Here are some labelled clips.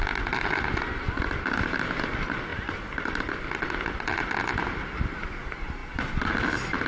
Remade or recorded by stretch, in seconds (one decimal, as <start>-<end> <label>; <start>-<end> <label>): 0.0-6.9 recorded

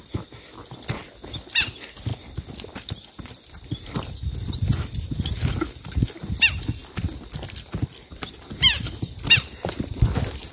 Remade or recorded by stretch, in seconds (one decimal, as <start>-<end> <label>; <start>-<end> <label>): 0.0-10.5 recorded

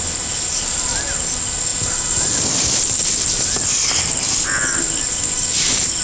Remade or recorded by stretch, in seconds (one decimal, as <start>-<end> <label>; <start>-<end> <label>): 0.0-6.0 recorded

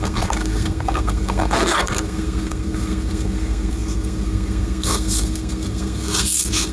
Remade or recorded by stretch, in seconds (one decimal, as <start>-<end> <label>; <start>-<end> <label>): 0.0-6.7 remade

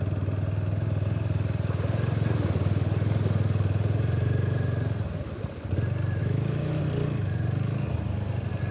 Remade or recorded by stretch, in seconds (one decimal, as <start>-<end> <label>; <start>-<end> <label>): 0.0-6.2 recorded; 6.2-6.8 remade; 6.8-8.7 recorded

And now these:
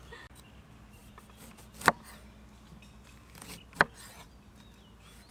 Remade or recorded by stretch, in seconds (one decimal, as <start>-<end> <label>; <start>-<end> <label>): 0.0-5.3 recorded